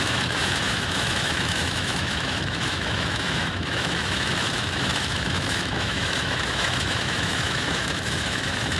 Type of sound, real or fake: fake